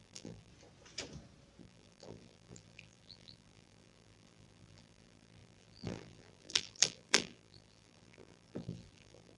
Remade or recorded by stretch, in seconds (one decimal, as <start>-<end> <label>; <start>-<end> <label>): 0.0-0.5 remade; 0.5-1.6 recorded; 1.6-9.4 remade

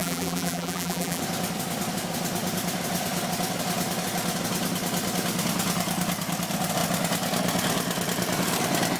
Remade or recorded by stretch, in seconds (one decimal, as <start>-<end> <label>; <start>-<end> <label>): 0.0-1.2 remade; 1.2-9.0 recorded